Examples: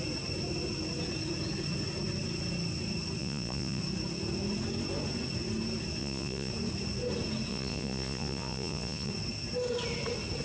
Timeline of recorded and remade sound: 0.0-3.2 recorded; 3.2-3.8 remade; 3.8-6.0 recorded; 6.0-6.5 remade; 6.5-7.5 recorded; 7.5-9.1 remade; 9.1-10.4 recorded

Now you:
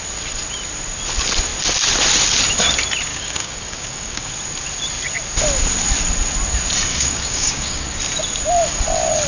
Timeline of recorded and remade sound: 0.0-3.1 recorded; 3.1-4.3 remade; 4.3-6.9 recorded; 6.9-8.0 remade; 8.0-9.3 recorded

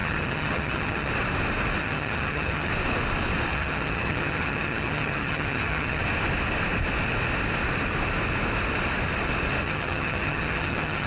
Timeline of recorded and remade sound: 0.0-1.1 remade; 1.1-1.8 recorded; 1.8-2.7 remade; 2.7-3.5 recorded; 3.5-6.0 remade; 6.0-9.6 recorded; 9.6-11.1 remade